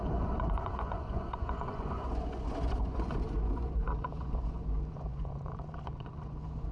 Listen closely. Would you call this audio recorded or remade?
remade